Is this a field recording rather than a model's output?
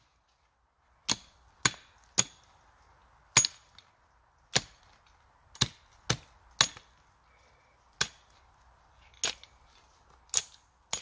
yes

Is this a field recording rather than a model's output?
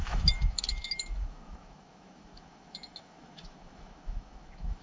no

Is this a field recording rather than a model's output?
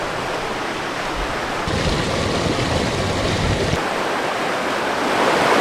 yes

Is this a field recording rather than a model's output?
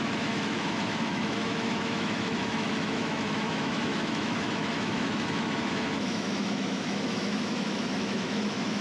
no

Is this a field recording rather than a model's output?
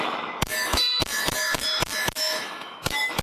no